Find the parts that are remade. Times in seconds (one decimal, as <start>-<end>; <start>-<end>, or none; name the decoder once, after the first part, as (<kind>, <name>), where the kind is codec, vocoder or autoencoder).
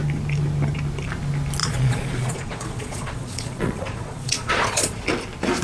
1.6-5.0 (vocoder, Vocos)